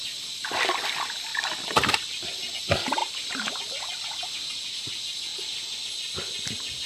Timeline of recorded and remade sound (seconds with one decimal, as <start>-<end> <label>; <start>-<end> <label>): 0.0-1.3 recorded; 1.3-2.5 remade; 2.5-5.3 recorded; 5.3-5.8 remade; 5.8-6.9 recorded